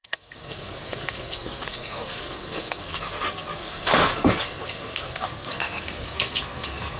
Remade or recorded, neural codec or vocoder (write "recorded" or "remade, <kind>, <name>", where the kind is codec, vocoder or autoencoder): remade, codec, SNAC